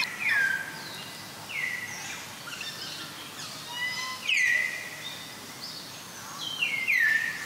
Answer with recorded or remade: recorded